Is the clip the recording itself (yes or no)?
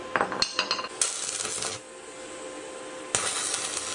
yes